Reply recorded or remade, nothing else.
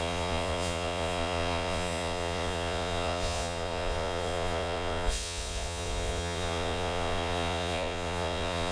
remade